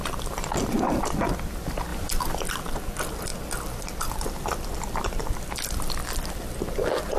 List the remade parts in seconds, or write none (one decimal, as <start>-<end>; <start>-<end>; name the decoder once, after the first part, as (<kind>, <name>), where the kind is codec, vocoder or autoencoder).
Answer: 0.0-7.2 (vocoder, BigVGAN v2)